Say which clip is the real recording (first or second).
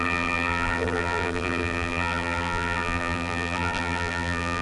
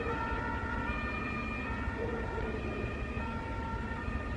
second